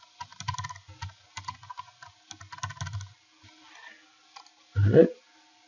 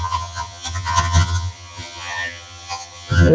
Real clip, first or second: first